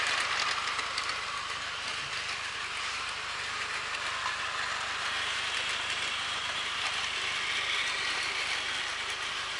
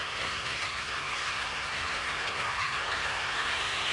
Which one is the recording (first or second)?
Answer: first